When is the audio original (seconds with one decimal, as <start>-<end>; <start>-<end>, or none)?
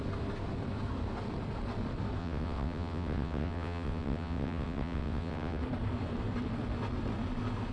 0.0-2.2; 5.6-7.7